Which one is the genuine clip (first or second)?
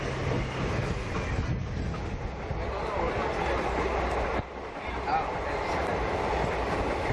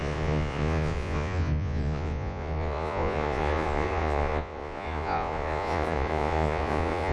first